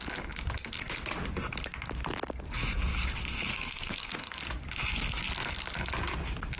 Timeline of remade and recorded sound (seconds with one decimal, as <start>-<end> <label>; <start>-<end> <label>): 0.0-3.5 recorded; 3.5-4.4 remade; 4.4-6.6 recorded